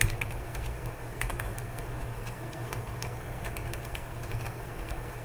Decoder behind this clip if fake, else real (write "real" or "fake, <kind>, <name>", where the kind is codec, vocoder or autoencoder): fake, codec, SNAC